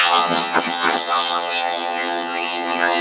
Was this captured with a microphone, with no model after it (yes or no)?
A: no